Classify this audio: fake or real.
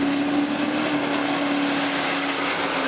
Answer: real